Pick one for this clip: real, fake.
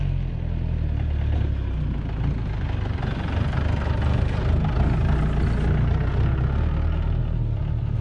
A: real